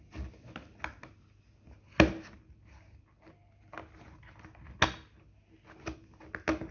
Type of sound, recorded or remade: recorded